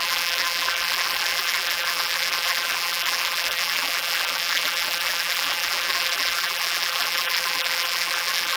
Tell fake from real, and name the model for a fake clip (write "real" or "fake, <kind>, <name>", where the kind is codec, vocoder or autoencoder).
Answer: fake, vocoder, BigVGAN v2